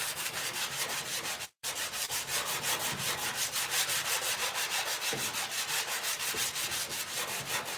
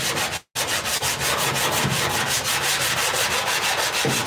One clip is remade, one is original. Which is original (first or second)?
second